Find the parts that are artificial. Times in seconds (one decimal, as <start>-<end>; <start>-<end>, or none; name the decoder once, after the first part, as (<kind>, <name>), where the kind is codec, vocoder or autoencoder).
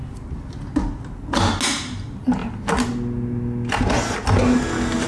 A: none